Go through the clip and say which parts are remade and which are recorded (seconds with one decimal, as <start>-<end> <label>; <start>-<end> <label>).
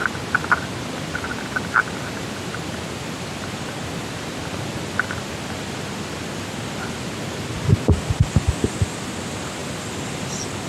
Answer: 0.0-10.7 recorded